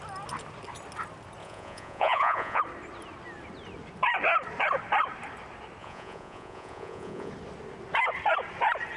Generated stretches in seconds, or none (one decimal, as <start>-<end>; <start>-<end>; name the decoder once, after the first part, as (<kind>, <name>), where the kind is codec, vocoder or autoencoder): 1.4-2.6 (vocoder, Vocos); 5.8-7.3